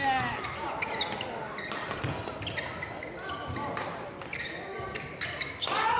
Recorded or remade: recorded